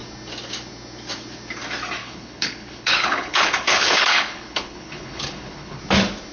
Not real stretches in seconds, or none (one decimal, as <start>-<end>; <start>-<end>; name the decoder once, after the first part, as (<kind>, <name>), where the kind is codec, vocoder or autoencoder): 2.0-5.8 (codec, HILCodec)